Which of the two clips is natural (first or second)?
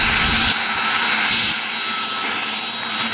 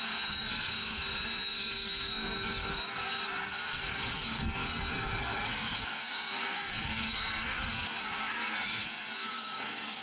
first